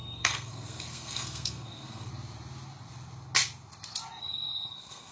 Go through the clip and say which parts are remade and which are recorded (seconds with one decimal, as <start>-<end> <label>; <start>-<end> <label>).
0.0-2.1 remade; 2.1-4.2 recorded; 4.2-5.1 remade